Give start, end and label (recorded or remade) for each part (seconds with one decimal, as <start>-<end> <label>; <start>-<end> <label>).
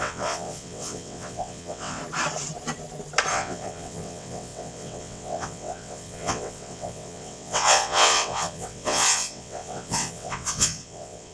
0.0-2.0 remade; 2.0-3.3 recorded; 3.3-11.3 remade